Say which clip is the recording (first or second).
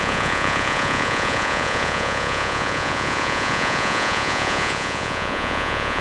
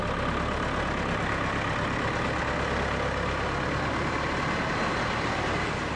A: second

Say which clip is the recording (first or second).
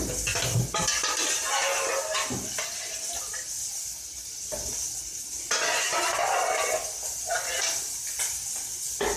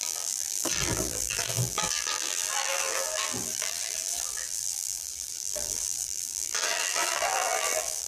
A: first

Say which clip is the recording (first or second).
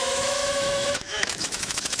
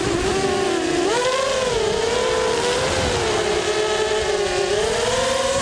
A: second